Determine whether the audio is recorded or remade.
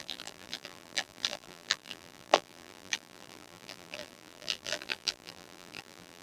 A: remade